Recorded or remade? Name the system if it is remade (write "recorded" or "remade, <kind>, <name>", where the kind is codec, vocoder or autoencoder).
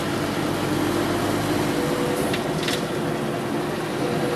recorded